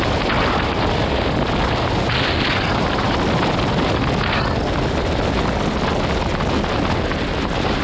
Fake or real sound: real